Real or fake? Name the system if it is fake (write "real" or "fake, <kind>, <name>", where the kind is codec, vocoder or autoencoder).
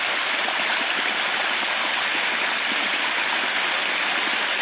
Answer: real